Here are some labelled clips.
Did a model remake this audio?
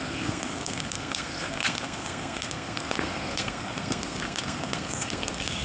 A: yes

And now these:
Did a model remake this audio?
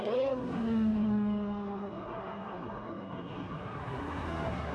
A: yes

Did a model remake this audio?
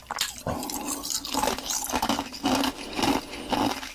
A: no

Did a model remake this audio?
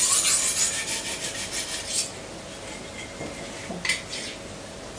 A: no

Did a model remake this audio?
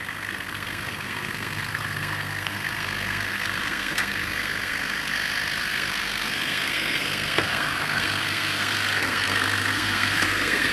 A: yes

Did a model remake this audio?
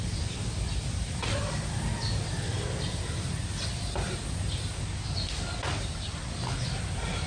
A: no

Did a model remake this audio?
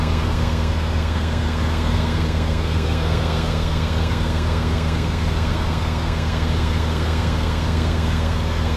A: yes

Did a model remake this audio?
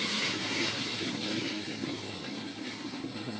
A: yes